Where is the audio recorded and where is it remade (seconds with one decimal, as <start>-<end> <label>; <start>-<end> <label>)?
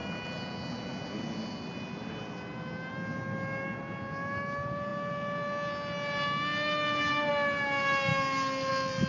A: 0.0-9.1 recorded